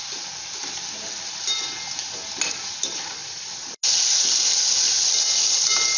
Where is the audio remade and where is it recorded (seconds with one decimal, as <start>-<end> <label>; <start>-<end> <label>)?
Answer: 0.0-3.2 recorded; 3.2-3.8 remade; 3.8-6.0 recorded

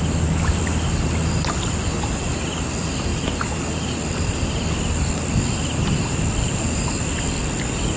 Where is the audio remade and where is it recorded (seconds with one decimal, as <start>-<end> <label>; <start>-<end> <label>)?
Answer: 0.0-8.0 recorded

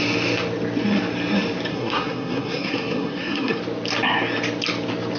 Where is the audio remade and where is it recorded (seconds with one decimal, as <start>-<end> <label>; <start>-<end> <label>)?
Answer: 0.0-1.7 recorded; 1.7-3.6 remade; 3.6-5.2 recorded